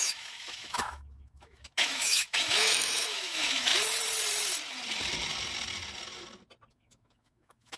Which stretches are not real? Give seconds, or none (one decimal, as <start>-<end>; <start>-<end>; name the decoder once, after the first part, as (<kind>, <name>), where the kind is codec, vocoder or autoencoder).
0.0-3.7 (autoencoder, DAC-VAE); 6.7-7.8